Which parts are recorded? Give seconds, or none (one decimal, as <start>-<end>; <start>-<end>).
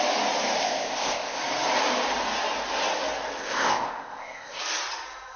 0.0-0.6; 1.4-3.4; 4.6-5.4